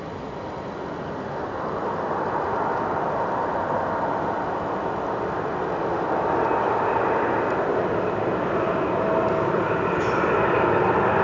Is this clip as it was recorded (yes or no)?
yes